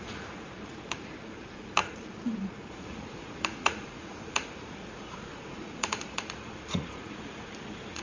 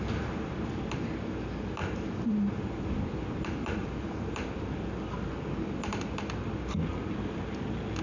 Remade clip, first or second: first